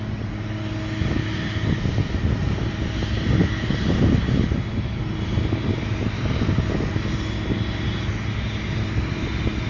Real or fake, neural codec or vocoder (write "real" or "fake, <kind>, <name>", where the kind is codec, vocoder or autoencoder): real